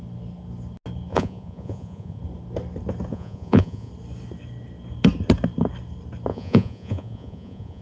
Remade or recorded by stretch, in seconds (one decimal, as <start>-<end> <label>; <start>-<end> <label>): 0.0-1.1 recorded; 1.1-2.2 remade; 2.2-3.1 recorded; 3.1-3.9 remade; 3.9-6.3 recorded; 6.3-7.8 remade

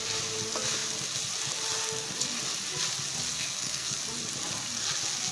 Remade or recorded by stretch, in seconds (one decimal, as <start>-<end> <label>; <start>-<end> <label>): 0.0-3.3 recorded; 3.3-4.0 remade; 4.0-5.3 recorded

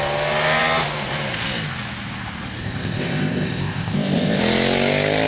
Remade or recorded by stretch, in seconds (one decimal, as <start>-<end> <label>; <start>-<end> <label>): 0.0-2.6 recorded; 2.6-4.4 remade; 4.4-5.3 recorded

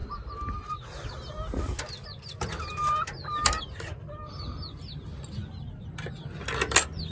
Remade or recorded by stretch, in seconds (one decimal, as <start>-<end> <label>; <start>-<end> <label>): 0.0-7.1 recorded

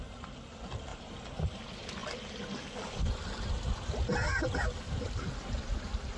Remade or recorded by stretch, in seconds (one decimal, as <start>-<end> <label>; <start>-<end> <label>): 0.0-0.9 recorded; 0.9-1.6 remade; 1.6-6.2 recorded